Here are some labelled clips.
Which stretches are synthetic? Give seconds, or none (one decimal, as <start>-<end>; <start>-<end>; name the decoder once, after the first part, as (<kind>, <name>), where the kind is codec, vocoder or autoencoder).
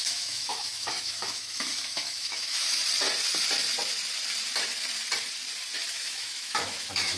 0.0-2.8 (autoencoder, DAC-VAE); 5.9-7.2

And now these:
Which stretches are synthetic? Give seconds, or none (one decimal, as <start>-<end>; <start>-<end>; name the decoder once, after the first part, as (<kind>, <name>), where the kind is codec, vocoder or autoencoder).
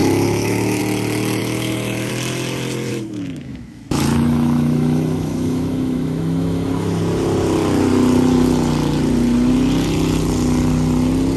0.0-0.8 (autoencoder, DAC-VAE); 1.4-2.1; 2.9-7.0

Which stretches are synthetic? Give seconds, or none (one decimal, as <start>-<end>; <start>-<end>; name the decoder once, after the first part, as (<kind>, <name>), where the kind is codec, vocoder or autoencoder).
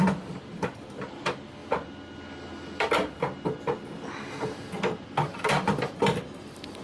none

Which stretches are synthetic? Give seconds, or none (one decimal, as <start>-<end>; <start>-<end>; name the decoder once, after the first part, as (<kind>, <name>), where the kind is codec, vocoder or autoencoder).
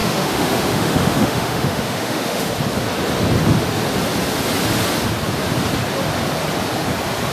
0.0-2.5 (autoencoder, DAC-VAE)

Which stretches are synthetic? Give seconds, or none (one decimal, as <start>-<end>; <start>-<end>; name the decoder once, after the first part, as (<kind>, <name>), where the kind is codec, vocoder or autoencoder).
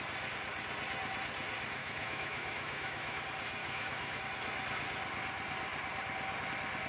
1.8-3.2 (autoencoder, DAC-VAE); 3.6-4.2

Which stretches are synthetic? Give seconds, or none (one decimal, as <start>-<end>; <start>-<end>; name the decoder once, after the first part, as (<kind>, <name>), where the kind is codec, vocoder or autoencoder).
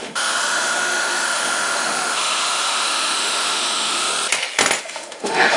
0.0-4.1 (autoencoder, DAC-VAE); 4.8-5.6